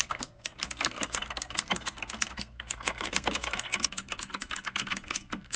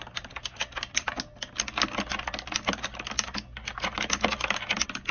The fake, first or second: first